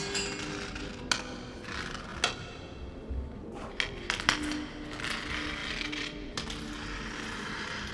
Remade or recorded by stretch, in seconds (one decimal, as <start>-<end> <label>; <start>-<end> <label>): 0.0-5.6 recorded; 5.6-6.3 remade; 6.3-7.9 recorded